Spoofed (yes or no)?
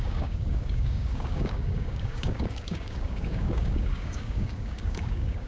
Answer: yes